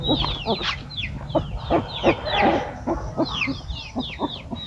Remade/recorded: recorded